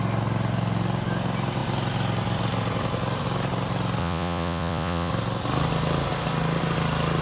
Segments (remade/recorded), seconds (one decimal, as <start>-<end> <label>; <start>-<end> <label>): 0.0-4.0 recorded; 4.0-5.1 remade; 5.1-7.2 recorded